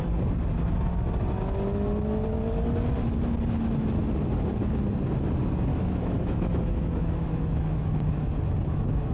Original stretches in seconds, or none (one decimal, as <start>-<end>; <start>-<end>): 0.0-5.7; 8.1-9.1